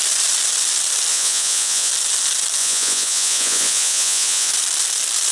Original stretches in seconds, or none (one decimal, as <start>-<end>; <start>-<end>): 0.0-1.1; 1.9-2.6; 4.5-5.3